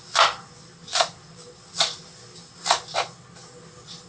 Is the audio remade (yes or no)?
no